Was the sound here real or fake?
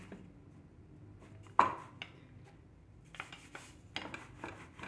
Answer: real